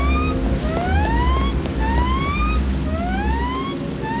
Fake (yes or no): no